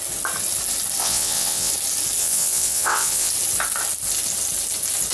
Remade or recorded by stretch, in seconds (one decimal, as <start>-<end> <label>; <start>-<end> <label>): 0.0-1.0 recorded; 1.0-1.7 remade; 1.7-2.2 recorded; 2.2-3.3 remade; 3.3-5.1 recorded